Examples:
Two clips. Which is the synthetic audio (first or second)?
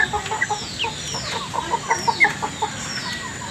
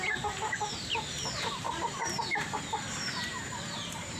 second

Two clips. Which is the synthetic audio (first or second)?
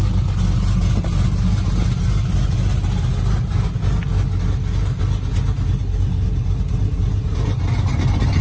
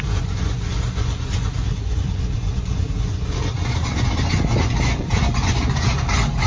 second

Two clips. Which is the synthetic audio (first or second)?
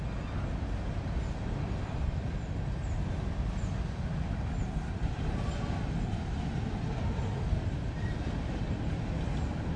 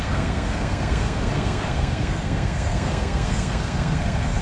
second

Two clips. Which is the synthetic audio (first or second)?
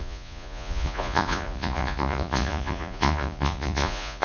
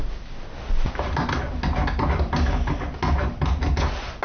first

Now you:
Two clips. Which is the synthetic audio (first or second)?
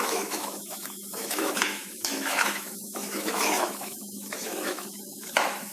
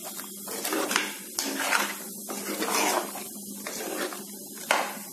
first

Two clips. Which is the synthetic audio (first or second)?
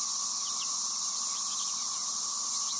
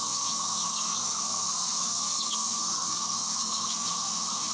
second